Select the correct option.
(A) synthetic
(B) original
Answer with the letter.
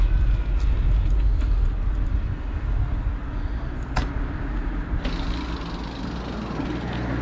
B